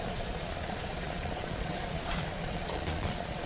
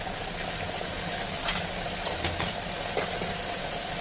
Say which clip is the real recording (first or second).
second